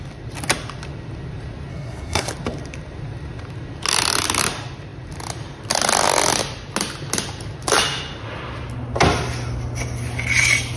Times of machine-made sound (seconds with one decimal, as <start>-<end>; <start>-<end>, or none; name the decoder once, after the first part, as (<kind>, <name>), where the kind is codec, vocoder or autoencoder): 1.7-2.3 (codec, SNAC)